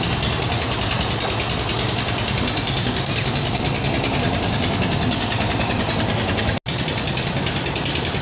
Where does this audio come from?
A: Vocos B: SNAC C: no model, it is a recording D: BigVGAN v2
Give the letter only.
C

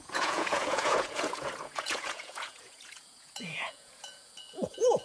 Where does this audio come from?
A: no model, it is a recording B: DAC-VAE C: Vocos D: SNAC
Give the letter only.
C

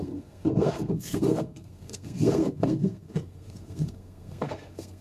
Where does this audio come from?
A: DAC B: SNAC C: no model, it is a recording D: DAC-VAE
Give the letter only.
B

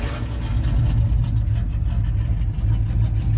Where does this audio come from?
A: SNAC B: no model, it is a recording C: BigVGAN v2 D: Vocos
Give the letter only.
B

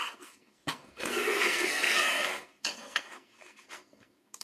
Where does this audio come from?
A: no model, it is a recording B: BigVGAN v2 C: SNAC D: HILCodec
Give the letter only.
C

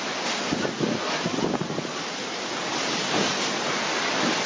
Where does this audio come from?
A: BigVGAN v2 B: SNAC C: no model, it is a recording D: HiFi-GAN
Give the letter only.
C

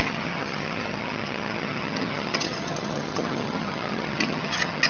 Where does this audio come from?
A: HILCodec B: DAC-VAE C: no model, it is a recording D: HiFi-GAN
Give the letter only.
D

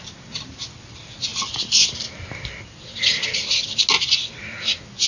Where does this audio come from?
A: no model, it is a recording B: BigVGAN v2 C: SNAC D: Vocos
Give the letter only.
A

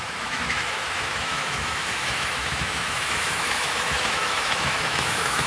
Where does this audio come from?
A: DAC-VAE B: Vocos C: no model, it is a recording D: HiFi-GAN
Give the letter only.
A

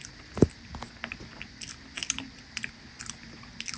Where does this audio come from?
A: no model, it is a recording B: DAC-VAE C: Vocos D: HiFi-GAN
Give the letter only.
A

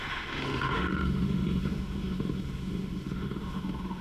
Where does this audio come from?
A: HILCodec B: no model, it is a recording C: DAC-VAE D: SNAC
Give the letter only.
C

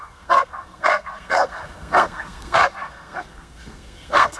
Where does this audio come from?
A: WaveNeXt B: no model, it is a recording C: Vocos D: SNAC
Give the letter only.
D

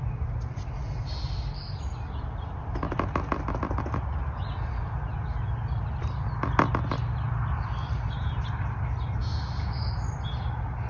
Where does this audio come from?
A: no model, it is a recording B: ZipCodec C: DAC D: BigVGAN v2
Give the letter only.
A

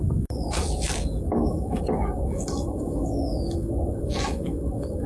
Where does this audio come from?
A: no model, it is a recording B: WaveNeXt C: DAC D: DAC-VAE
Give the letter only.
D